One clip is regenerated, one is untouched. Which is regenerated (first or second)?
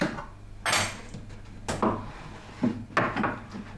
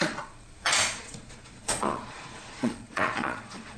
second